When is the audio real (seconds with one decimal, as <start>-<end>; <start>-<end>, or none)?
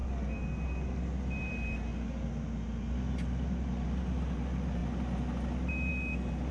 0.0-6.5